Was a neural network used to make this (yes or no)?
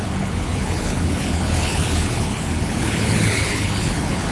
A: yes